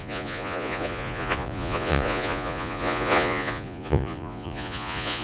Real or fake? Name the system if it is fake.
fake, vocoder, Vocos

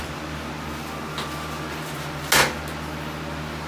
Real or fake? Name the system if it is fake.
real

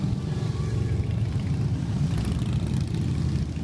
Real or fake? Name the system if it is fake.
real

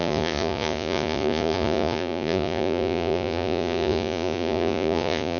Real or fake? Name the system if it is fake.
fake, vocoder, Vocos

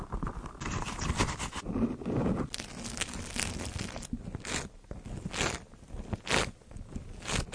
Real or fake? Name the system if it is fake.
real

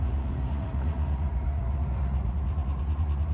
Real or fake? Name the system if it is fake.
fake, vocoder, Vocos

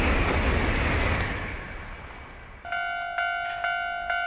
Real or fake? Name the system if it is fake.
real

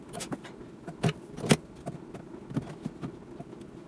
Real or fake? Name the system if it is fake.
real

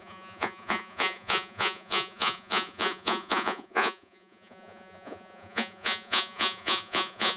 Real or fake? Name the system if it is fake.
fake, vocoder, Vocos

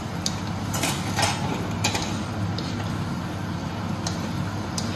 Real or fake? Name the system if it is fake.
real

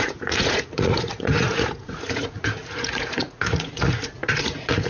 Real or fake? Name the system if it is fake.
fake, vocoder, Vocos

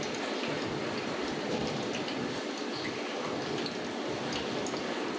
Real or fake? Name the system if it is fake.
real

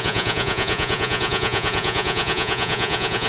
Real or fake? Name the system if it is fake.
fake, vocoder, Vocos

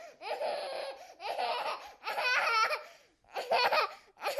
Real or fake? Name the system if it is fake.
real